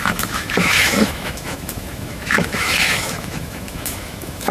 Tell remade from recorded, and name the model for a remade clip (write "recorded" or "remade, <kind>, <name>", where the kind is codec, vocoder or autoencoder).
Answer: remade, autoencoder, DAC-VAE